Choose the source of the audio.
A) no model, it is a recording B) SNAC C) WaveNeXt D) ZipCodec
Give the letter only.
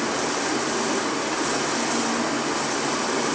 A